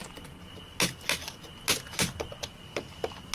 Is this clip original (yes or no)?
yes